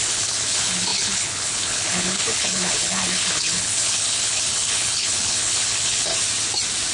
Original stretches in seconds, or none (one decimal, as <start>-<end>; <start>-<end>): 6.1-6.9

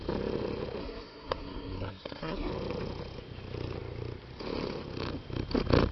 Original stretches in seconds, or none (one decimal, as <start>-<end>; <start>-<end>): 0.0-0.8; 2.5-5.9